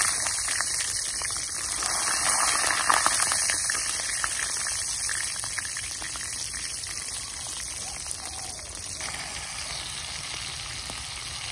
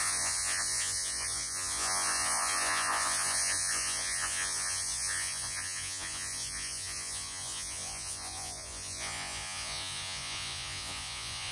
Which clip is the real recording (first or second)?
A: first